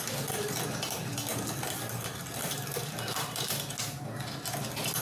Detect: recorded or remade recorded